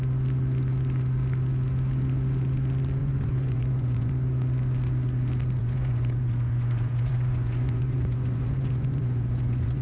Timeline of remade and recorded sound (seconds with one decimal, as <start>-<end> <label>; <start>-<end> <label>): 0.0-3.0 recorded; 3.0-4.1 remade; 4.1-5.6 recorded; 5.6-9.8 remade